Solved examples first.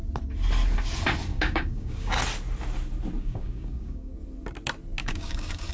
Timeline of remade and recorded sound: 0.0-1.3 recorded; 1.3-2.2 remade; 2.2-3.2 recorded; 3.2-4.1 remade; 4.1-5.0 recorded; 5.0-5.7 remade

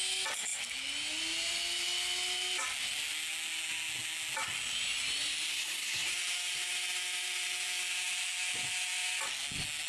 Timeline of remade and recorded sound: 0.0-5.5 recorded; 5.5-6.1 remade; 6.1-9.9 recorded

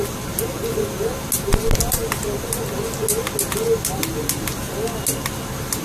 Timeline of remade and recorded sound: 0.0-5.8 recorded